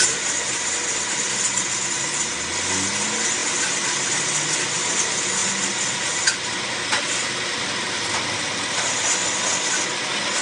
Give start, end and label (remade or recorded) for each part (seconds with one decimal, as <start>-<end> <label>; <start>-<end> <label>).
0.0-10.4 recorded